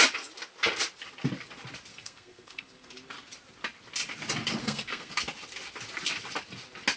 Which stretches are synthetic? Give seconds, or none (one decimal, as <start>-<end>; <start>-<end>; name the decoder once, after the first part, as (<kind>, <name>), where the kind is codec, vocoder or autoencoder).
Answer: 1.9-2.9 (codec, SNAC); 4.6-5.1